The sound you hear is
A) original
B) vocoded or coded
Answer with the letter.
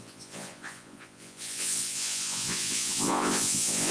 B